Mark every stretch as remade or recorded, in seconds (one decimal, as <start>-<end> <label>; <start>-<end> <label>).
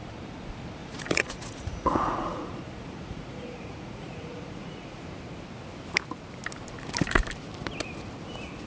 0.0-0.8 recorded; 0.8-5.2 remade; 5.2-8.7 recorded